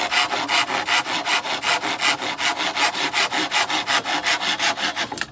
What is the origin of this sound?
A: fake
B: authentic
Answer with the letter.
B